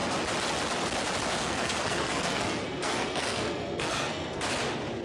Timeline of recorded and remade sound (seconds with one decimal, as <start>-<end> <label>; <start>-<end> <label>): 0.0-1.4 recorded; 1.4-4.4 remade; 4.4-5.0 recorded